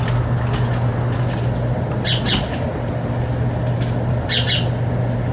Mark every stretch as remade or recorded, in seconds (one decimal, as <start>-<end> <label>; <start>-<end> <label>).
0.0-5.3 recorded